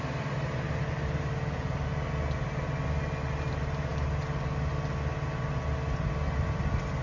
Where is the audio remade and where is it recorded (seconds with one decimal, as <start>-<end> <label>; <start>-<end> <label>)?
0.0-7.0 recorded